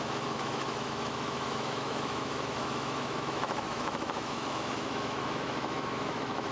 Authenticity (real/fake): fake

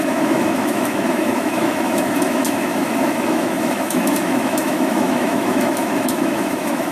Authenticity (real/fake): fake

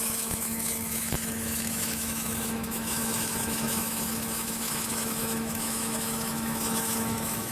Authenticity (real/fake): fake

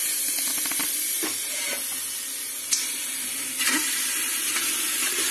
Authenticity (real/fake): real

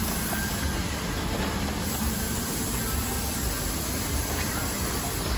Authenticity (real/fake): real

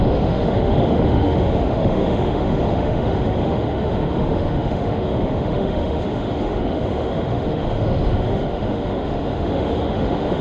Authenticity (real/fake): fake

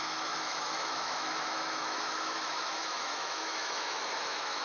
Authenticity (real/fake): fake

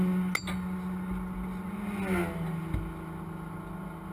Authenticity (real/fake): real